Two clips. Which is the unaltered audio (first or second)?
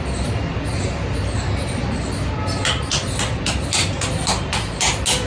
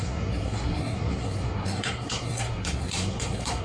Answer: first